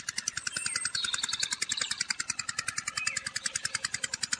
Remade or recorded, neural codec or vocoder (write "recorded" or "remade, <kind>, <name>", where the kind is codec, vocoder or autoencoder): recorded